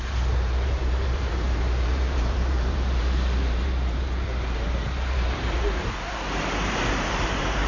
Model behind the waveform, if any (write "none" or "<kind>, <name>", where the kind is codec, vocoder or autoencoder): vocoder, BigVGAN v2